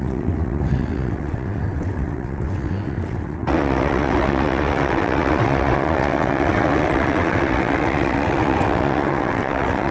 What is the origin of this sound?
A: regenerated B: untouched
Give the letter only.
A